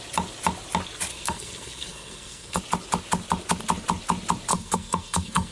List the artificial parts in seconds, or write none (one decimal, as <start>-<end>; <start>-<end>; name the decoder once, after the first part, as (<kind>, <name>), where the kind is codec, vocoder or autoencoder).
1.1-2.6 (codec, SNAC); 4.5-5.5